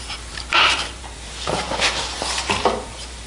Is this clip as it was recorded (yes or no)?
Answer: no